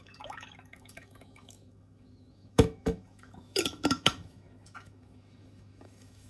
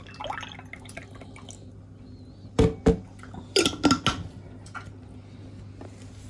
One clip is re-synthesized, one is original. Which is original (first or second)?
second